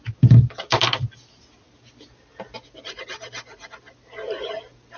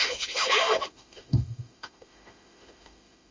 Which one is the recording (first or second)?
first